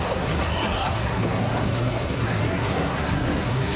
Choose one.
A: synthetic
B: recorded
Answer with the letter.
A